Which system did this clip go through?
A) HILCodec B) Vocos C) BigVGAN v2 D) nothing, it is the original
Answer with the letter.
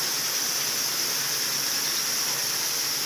D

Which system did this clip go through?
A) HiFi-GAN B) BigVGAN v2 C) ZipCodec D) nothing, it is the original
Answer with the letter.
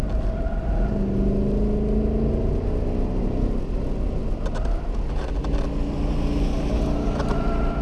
D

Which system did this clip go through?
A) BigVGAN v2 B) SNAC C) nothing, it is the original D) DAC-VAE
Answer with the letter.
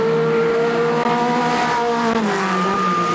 C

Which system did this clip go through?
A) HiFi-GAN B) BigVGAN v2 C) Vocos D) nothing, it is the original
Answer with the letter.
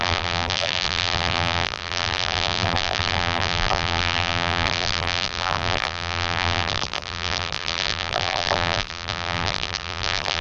B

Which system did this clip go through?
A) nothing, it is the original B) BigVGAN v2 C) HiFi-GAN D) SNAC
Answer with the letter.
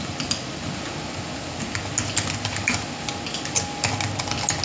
A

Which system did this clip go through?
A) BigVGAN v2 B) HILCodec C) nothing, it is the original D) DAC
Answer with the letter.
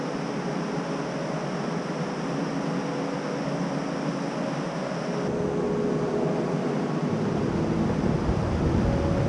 C